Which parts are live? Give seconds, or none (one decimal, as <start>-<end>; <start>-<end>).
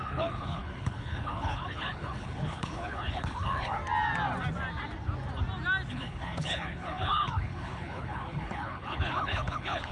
3.8-5.9